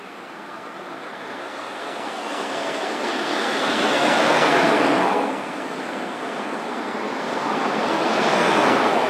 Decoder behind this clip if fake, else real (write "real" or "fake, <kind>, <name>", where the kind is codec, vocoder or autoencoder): fake, codec, SNAC